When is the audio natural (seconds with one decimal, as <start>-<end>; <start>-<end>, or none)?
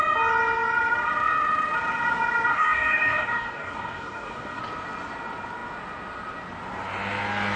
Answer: 0.0-2.5; 4.6-7.6